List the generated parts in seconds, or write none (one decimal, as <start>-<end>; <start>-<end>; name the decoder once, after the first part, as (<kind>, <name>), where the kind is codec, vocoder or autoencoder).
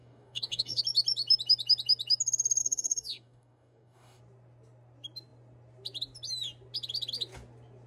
0.0-0.8 (codec, DAC); 2.6-4.2